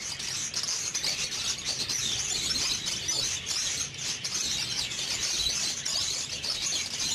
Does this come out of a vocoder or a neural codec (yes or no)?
no